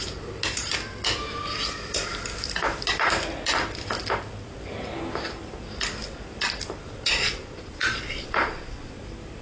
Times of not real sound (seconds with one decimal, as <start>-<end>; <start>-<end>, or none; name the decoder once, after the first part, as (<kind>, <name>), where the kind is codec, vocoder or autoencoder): 6.8-8.9 (vocoder, Vocos)